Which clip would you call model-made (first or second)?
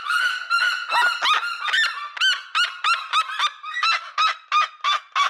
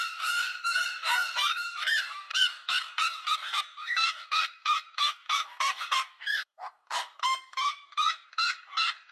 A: second